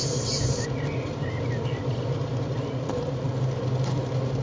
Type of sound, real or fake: real